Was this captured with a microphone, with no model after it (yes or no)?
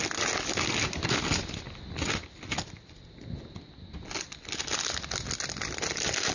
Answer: yes